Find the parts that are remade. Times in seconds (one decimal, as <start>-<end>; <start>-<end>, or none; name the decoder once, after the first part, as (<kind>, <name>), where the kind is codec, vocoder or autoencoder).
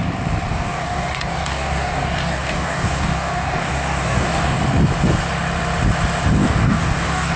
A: 0.5-4.6 (codec, DAC); 6.4-7.4